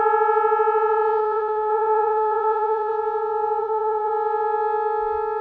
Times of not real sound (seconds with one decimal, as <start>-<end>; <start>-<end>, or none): 1.2-2.9; 3.6-4.1